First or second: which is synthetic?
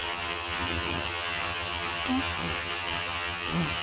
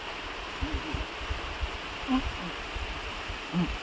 first